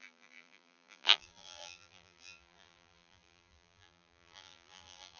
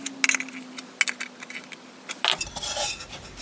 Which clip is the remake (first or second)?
first